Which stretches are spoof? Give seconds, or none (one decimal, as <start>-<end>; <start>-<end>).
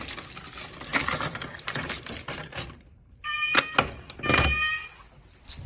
0.9-3.3